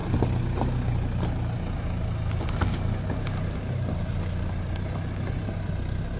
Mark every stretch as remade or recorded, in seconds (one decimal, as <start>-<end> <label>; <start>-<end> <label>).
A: 0.0-6.2 recorded

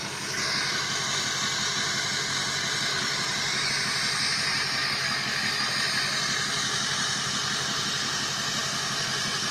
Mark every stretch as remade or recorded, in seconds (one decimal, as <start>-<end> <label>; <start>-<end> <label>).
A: 0.0-2.9 recorded; 2.9-3.7 remade; 3.7-4.8 recorded; 4.8-5.7 remade; 5.7-9.5 recorded